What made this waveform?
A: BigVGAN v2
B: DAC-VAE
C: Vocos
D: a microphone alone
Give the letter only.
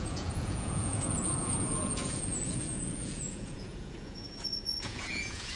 C